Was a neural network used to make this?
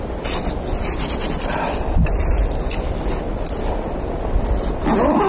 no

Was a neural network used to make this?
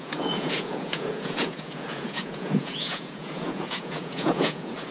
yes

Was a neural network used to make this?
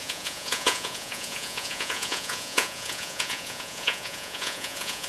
yes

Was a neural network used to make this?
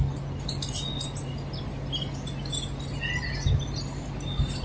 no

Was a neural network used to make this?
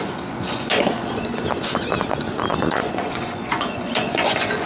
yes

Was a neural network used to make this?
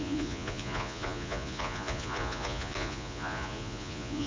yes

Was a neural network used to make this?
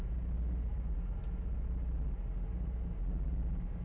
no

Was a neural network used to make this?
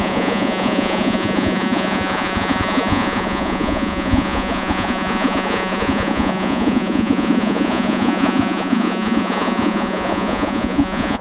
yes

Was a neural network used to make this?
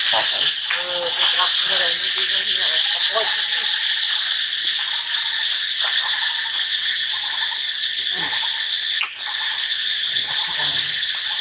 no